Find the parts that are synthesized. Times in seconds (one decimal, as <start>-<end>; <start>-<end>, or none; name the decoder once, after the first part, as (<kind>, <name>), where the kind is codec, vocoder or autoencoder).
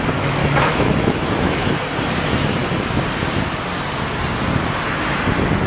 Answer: 0.4-1.7 (autoencoder, DAC-VAE)